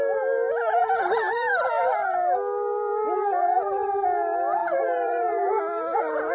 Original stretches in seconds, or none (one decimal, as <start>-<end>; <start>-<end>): 0.0-0.8; 1.5-4.6; 5.6-6.3